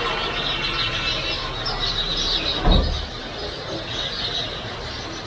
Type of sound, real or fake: real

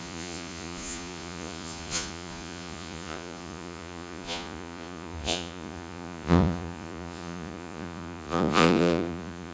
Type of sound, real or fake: fake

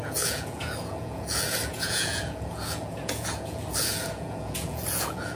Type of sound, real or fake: fake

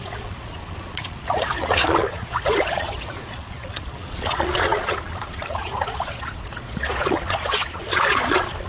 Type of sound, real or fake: fake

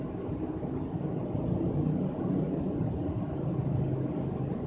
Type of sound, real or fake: real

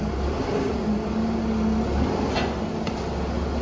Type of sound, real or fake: real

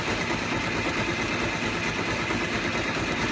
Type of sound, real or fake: real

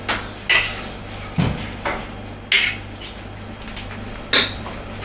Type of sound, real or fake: real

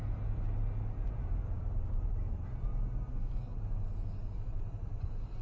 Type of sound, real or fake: real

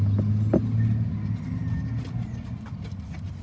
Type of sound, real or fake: real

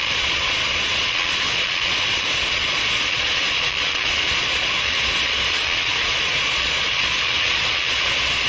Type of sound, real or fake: fake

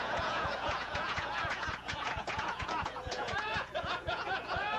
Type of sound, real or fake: fake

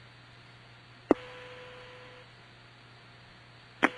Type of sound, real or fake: real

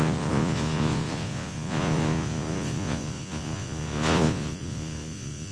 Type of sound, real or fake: fake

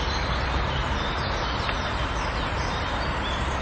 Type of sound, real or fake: real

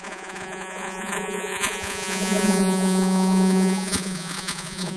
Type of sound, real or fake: fake